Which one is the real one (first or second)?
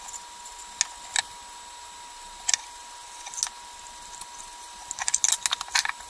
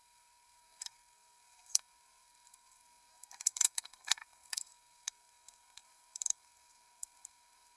first